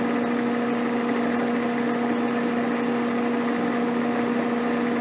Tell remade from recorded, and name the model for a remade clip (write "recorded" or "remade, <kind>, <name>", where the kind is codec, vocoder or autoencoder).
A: recorded